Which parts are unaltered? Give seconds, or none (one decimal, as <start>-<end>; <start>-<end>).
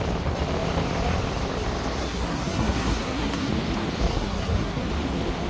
0.0-2.0; 3.5-4.1; 4.9-5.5